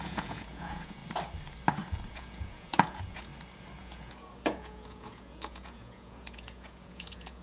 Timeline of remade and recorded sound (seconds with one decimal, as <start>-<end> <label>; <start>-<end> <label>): 0.0-1.0 remade; 1.0-2.1 recorded; 2.1-3.3 remade; 3.3-3.8 recorded; 3.8-7.4 remade